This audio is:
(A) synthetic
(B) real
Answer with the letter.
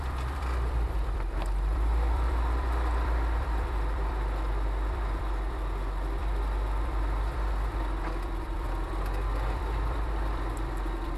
A